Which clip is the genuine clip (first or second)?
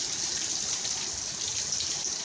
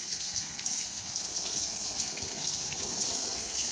first